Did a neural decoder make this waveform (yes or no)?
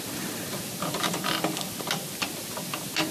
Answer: no